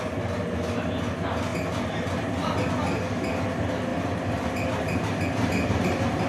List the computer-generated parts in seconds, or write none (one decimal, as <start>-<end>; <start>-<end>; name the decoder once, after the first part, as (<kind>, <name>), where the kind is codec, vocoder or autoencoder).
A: none